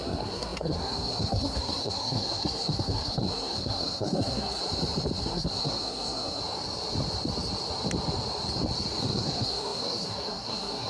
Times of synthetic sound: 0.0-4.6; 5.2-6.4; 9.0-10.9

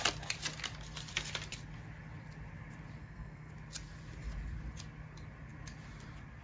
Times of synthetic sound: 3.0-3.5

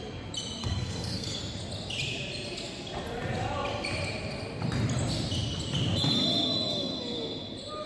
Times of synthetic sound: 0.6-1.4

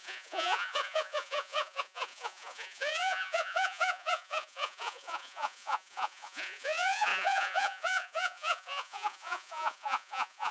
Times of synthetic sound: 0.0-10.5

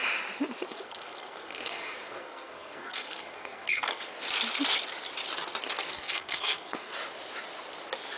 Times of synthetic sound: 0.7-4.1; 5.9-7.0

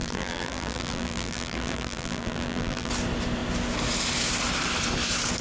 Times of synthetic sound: 0.0-2.9

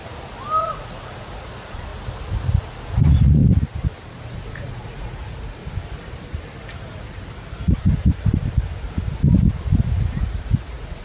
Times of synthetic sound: 0.6-1.9; 2.9-3.4; 4.2-5.6; 10.2-11.0

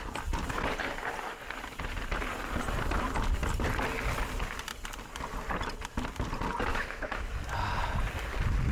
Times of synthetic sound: 6.7-7.3